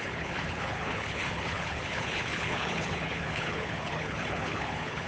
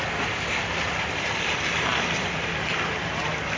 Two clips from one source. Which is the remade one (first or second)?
first